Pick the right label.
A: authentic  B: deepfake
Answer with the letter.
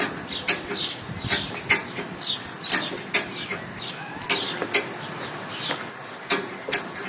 A